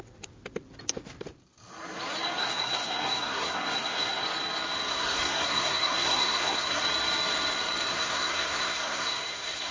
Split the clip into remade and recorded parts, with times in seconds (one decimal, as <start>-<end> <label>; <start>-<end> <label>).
0.0-2.4 recorded; 2.4-4.2 remade; 4.2-4.9 recorded; 4.9-6.8 remade; 6.8-7.9 recorded; 7.9-9.7 remade